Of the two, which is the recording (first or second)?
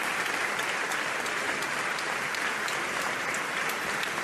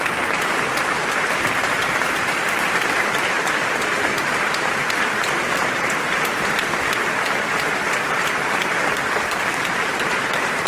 first